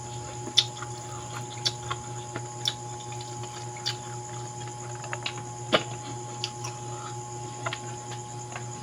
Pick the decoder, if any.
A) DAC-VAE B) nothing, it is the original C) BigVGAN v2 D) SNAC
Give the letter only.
B